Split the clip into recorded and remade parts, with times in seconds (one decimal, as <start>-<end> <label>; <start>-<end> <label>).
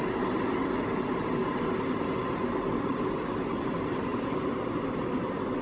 0.0-5.6 recorded